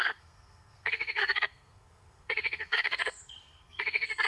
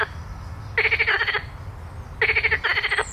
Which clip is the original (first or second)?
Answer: second